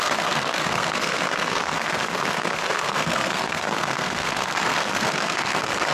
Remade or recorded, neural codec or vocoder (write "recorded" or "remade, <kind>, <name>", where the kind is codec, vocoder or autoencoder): remade, codec, SNAC